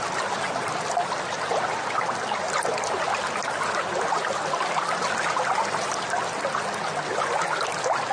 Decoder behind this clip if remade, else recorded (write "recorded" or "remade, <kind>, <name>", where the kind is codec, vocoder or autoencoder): recorded